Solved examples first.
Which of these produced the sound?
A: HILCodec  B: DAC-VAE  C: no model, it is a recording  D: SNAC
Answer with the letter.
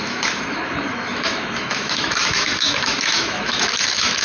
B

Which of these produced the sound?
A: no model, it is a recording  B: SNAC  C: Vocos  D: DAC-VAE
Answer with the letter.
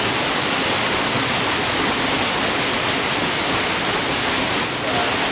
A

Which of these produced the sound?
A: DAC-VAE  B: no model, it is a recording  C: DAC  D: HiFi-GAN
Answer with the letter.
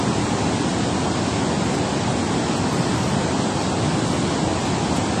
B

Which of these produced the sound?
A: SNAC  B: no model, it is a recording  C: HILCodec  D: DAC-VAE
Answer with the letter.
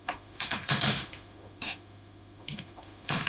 D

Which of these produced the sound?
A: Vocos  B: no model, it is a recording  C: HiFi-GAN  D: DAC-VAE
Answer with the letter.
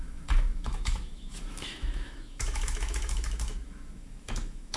D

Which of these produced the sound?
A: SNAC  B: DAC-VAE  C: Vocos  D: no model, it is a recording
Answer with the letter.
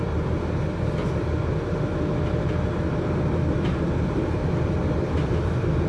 D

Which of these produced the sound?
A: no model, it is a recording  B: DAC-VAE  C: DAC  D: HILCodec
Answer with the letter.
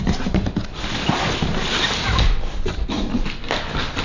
A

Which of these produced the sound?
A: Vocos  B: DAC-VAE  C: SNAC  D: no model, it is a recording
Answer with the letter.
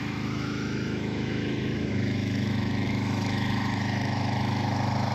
B